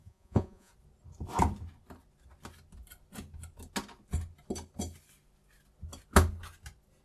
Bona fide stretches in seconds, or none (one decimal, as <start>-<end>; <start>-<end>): 0.7-7.0